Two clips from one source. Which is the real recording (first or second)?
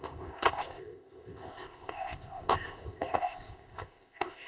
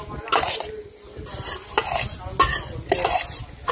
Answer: second